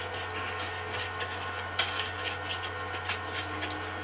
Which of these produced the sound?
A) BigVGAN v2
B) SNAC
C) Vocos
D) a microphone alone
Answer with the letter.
D